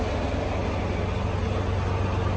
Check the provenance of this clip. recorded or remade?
recorded